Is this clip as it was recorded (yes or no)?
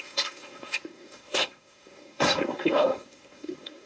no